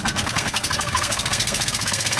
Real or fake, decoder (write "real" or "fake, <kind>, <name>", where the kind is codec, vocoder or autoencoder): fake, codec, SNAC